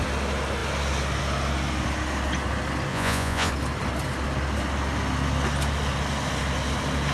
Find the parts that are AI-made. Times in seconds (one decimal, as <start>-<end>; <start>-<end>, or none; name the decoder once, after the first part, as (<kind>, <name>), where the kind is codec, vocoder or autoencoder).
2.9-3.5 (vocoder, Vocos)